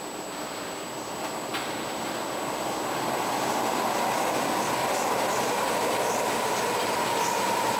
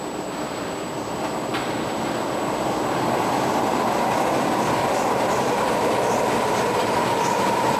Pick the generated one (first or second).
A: second